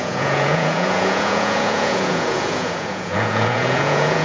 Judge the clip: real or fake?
fake